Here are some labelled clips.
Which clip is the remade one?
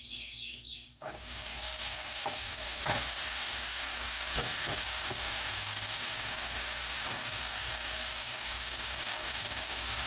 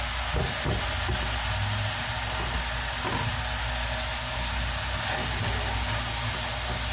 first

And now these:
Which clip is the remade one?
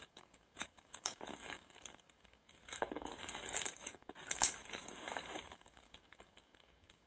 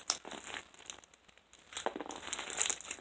first